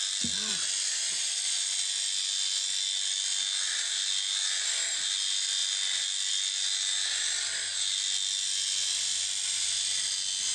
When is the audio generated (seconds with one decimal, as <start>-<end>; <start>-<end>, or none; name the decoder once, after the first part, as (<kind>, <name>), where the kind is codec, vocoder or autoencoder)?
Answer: none